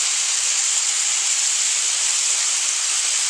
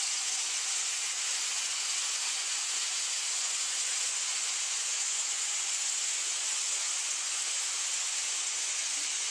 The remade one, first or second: second